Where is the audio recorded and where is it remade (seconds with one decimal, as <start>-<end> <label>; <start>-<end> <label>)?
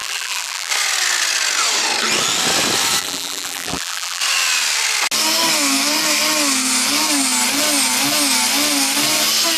0.0-0.7 remade; 0.7-3.0 recorded; 3.0-4.2 remade; 4.2-9.6 recorded